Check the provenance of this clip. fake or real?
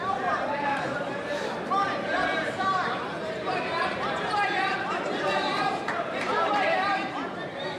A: fake